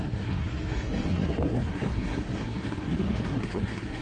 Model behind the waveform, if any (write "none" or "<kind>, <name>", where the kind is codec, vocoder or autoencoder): codec, SNAC